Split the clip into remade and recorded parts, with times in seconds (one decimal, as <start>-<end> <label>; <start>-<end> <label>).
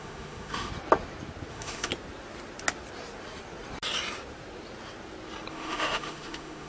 0.0-0.7 remade; 0.7-1.5 recorded; 1.5-1.9 remade; 1.9-5.5 recorded; 5.5-6.7 remade